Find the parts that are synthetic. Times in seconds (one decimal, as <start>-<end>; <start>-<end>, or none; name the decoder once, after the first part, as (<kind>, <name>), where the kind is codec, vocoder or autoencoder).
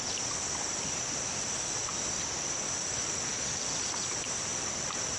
none